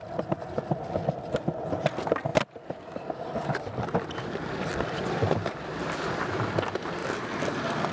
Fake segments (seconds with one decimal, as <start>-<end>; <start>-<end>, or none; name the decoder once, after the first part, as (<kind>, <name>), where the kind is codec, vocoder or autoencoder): 2.3-6.2 (vocoder, BigVGAN v2); 7.0-7.9